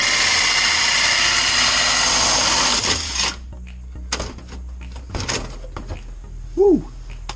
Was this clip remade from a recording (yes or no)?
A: no